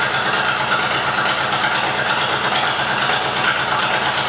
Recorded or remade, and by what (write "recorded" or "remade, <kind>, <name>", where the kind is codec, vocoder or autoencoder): recorded